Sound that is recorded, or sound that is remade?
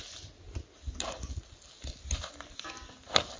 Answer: recorded